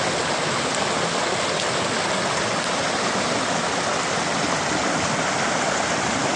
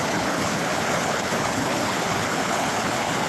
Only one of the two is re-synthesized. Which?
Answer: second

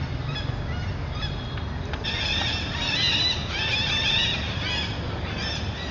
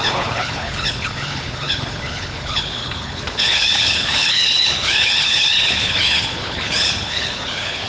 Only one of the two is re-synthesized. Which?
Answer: second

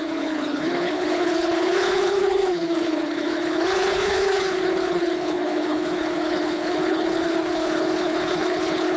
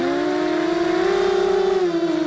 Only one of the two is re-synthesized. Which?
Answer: first